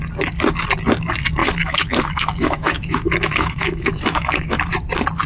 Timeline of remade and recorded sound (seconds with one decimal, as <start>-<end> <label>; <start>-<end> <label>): 0.0-1.4 recorded; 1.4-4.6 remade; 4.6-5.3 recorded